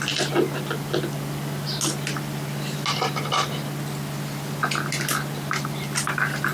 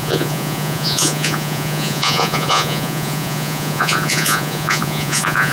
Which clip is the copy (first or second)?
second